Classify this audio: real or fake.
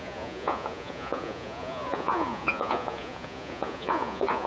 fake